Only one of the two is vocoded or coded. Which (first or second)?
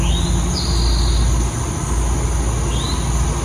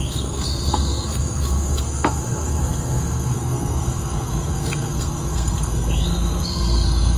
second